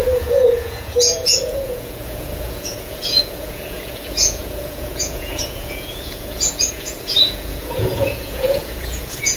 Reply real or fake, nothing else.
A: fake